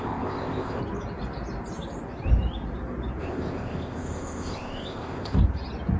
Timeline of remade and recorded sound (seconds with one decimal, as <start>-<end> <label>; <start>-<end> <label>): 0.0-0.8 remade; 0.8-3.2 recorded; 3.2-5.4 remade; 5.4-6.0 recorded